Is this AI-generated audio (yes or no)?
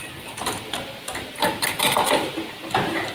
yes